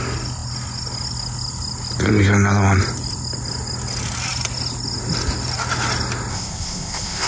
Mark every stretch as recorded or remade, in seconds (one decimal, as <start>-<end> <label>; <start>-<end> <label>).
0.0-6.3 recorded; 6.3-7.3 remade